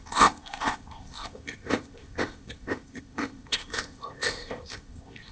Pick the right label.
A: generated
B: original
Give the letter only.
A